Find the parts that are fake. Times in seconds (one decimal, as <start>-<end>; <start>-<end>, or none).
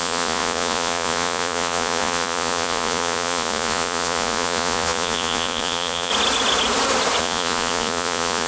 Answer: 0.0-6.1; 7.2-8.5